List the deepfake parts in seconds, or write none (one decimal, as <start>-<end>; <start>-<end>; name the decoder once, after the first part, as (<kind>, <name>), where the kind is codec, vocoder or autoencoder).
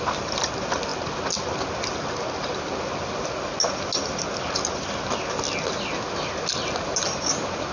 none